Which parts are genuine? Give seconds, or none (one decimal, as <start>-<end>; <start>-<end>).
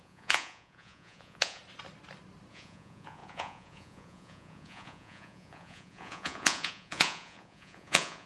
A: 1.6-2.5